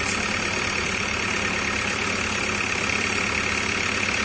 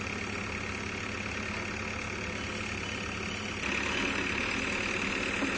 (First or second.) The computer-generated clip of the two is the first